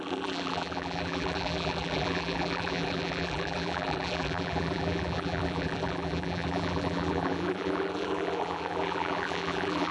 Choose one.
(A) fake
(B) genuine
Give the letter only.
A